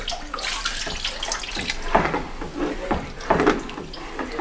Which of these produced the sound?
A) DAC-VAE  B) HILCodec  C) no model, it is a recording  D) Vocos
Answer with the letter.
C